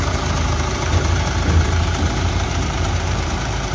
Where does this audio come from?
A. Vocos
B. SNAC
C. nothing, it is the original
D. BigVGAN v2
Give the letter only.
D